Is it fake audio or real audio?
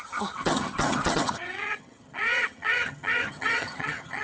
fake